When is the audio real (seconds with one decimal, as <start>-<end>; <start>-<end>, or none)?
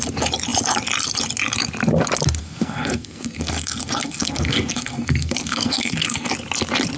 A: 0.0-2.4; 6.3-7.0